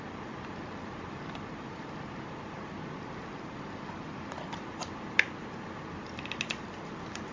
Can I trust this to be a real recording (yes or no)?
yes